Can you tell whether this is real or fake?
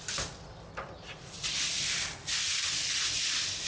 real